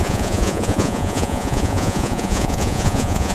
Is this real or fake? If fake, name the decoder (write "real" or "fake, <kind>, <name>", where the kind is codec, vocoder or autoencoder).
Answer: fake, vocoder, Vocos